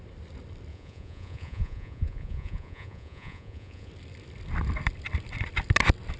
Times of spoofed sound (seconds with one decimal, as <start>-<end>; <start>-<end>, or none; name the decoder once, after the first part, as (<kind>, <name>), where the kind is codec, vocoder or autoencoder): 0.7-3.9 (vocoder, Vocos)